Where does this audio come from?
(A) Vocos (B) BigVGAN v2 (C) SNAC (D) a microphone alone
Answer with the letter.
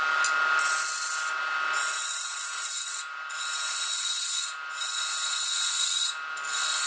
D